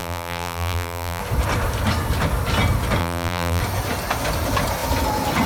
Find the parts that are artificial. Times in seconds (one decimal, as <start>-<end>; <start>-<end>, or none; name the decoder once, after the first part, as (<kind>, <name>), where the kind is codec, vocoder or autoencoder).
0.0-1.2 (vocoder, BigVGAN v2); 3.0-3.6